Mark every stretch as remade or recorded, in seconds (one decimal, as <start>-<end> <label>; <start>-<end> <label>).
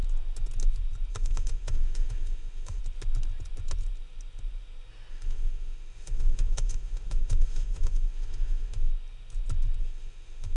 0.0-1.1 recorded; 1.1-2.8 remade; 2.8-5.1 recorded; 5.1-8.9 remade; 8.9-9.8 recorded; 9.8-10.6 remade